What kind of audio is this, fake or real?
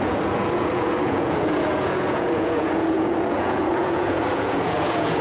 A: fake